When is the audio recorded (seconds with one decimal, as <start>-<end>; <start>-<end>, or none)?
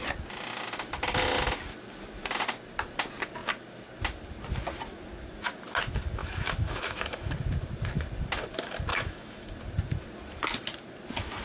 0.0-6.2; 7.3-8.9; 9.5-11.4